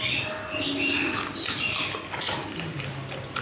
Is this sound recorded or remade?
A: recorded